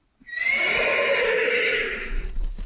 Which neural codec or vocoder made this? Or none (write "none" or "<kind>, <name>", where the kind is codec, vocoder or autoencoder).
none